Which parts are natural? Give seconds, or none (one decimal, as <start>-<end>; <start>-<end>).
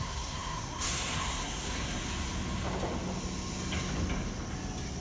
2.0-5.0